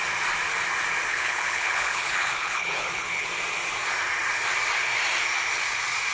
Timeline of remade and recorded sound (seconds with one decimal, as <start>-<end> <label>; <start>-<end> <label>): 0.0-1.1 recorded; 1.1-3.3 remade; 3.3-6.1 recorded

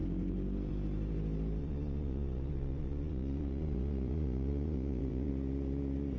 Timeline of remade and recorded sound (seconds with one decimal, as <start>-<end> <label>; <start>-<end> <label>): 0.0-1.6 recorded; 1.6-5.3 remade; 5.3-6.2 recorded

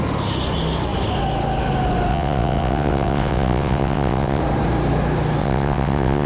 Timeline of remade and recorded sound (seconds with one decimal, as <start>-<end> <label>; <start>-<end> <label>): 0.0-2.1 recorded; 2.1-4.4 remade; 4.4-5.4 recorded; 5.4-6.3 remade

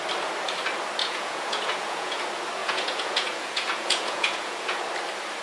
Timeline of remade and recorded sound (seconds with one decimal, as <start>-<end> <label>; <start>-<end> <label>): 0.0-1.0 recorded; 1.0-2.2 remade; 2.2-2.6 recorded; 2.6-4.8 remade; 4.8-5.4 recorded

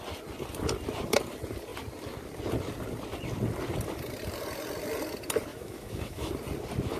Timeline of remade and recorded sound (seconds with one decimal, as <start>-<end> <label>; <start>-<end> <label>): 0.0-5.5 recorded; 5.5-6.3 remade; 6.3-7.0 recorded

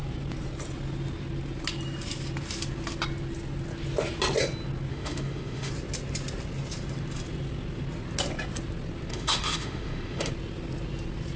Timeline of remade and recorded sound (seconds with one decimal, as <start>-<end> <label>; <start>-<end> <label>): 0.0-4.9 recorded; 4.9-5.7 remade; 5.7-9.1 recorded; 9.1-10.3 remade; 10.3-11.4 recorded